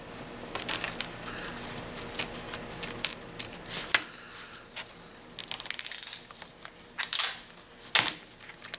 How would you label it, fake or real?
real